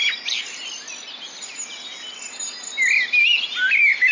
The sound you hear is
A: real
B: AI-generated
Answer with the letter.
A